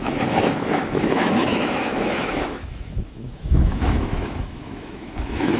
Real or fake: fake